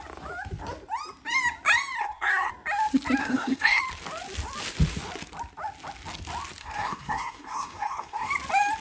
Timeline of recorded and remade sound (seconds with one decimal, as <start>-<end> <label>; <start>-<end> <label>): 0.0-2.0 recorded; 2.0-2.5 remade; 2.5-3.2 recorded; 3.2-3.8 remade; 3.8-6.6 recorded; 6.6-8.3 remade; 8.3-8.8 recorded